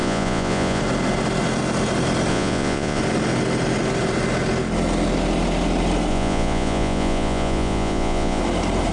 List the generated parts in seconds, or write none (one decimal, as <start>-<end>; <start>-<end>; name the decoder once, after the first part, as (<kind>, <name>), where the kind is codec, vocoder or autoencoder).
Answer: 0.0-0.8 (vocoder, Vocos); 2.3-3.0; 6.1-8.4